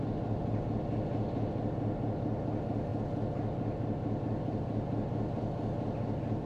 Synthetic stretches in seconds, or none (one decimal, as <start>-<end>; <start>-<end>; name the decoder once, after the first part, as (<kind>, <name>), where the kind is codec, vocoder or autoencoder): none